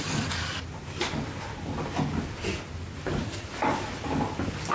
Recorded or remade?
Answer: recorded